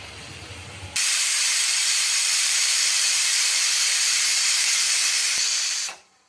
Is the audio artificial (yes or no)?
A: yes